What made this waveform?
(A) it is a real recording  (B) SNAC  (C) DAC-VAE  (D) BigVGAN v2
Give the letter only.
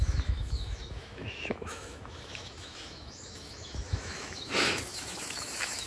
C